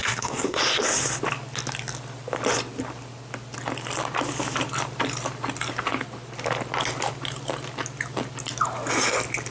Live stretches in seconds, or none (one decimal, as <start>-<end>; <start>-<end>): 0.6-9.5